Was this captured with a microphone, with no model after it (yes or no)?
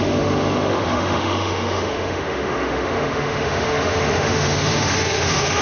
no